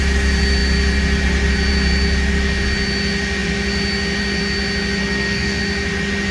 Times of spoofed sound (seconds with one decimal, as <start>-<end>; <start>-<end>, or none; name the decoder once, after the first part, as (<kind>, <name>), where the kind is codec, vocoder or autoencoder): 5.0-5.6 (codec, SNAC)